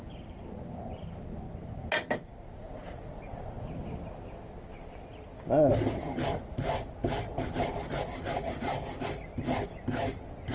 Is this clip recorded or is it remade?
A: recorded